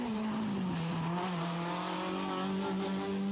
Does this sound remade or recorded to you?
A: recorded